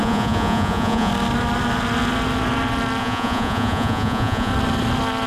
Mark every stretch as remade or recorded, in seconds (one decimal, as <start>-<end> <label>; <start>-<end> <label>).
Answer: 0.0-1.1 remade; 1.1-3.0 recorded; 3.0-4.5 remade; 4.5-5.3 recorded